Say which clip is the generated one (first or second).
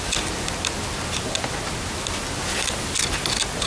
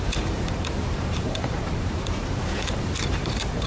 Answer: second